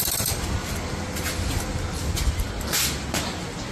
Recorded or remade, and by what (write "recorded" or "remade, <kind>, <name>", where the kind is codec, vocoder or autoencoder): recorded